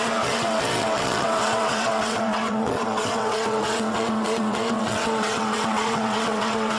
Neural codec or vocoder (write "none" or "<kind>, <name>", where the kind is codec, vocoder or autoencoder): vocoder, WaveNeXt